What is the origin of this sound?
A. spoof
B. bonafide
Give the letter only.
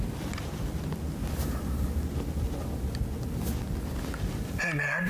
B